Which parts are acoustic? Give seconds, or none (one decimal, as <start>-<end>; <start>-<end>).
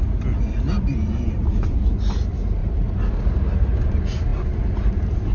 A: 0.0-2.6; 3.1-5.3